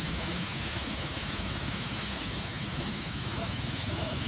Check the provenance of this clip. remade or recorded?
remade